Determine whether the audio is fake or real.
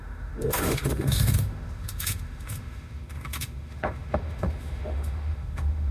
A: fake